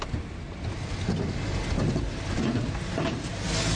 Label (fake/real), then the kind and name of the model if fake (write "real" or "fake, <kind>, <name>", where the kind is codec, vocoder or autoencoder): real